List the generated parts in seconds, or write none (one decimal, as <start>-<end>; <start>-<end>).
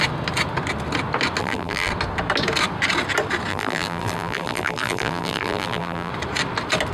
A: 1.4-1.9; 3.5-6.1